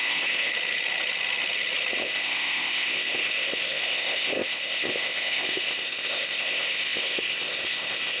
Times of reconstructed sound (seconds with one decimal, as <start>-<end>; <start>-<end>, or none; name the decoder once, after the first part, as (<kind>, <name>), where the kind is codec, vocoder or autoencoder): 0.0-0.5 (codec, ZipCodec); 2.0-8.2